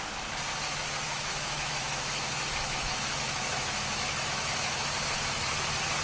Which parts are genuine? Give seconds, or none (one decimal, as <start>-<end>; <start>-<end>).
0.0-1.3; 4.9-6.0